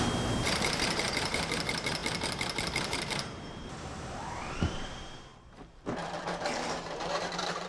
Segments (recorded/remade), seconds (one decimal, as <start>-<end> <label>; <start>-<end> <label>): 0.0-7.7 remade